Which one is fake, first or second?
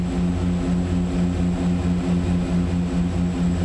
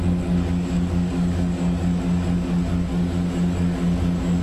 second